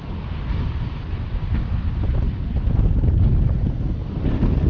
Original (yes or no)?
yes